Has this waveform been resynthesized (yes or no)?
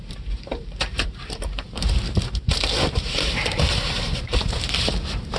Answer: yes